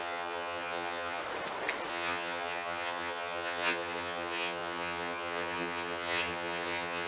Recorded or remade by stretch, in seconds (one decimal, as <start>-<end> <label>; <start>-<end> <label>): 0.0-1.2 remade; 1.2-1.9 recorded; 1.9-7.1 remade

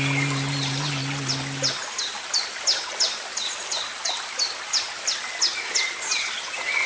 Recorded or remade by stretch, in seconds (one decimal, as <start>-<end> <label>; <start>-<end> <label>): 0.0-6.9 recorded

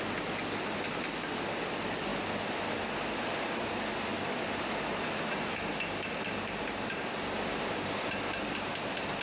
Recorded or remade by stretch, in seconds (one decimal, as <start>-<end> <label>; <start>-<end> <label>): 0.0-9.2 recorded

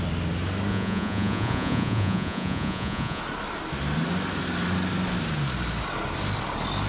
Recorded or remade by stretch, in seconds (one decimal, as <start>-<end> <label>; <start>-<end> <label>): 0.0-0.7 recorded; 0.7-3.2 remade; 3.2-6.9 recorded